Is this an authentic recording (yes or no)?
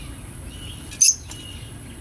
yes